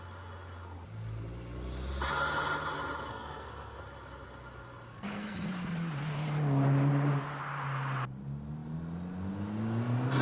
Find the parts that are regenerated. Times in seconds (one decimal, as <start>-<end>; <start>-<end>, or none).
3.1-3.8; 4.9-5.5

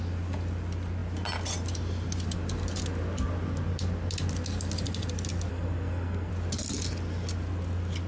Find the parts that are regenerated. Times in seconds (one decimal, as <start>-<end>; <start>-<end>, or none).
5.5-6.3

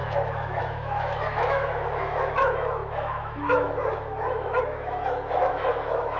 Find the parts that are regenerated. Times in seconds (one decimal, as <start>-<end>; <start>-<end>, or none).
0.0-6.2

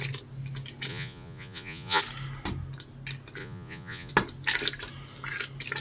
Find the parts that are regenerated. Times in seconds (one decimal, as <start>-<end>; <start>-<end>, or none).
0.9-2.0; 3.4-4.1

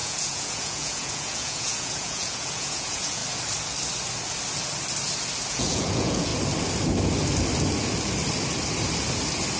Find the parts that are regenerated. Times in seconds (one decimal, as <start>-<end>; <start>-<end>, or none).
0.0-3.2; 5.5-6.3

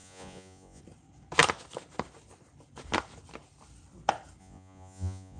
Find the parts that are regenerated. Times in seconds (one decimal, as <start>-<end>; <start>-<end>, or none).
0.0-0.8; 4.4-5.4